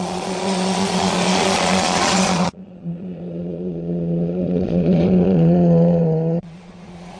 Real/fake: fake